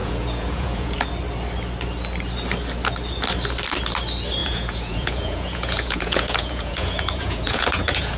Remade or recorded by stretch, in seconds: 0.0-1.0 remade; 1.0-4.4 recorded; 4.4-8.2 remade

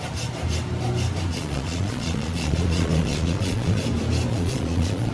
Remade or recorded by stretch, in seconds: 0.0-1.3 recorded; 1.3-3.8 remade; 3.8-4.3 recorded; 4.3-5.1 remade

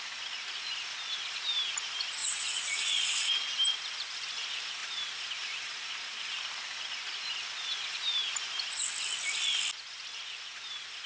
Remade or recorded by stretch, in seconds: 0.0-2.2 recorded; 2.2-3.3 remade; 3.3-11.1 recorded

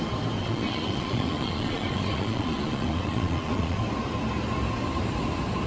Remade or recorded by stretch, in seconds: 0.0-0.4 recorded; 0.4-3.8 remade; 3.8-5.7 recorded

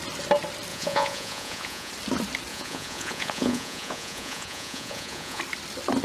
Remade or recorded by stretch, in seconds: 0.0-0.7 recorded; 0.7-1.9 remade; 1.9-2.5 recorded; 2.5-5.4 remade; 5.4-6.0 recorded

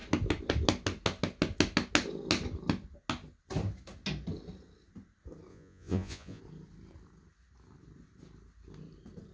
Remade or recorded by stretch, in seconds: 0.0-5.5 recorded; 5.5-6.4 remade; 6.4-9.3 recorded